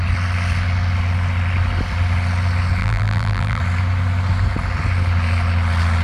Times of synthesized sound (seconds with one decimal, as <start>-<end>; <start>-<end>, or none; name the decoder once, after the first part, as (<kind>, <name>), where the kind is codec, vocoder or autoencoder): 2.8-3.6 (vocoder, BigVGAN v2)